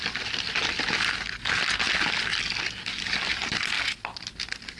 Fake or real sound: real